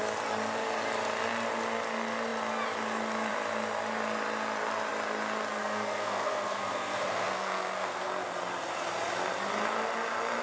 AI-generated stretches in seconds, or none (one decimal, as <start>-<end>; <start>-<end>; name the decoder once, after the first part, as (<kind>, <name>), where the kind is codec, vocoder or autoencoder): 5.6-8.1 (codec, SNAC)